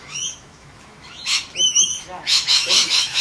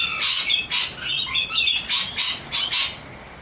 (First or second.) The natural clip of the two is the second